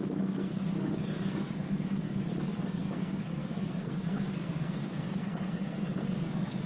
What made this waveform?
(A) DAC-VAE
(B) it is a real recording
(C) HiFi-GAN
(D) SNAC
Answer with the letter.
D